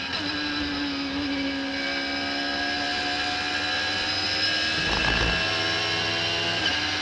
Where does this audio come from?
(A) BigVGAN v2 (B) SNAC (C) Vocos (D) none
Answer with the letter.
D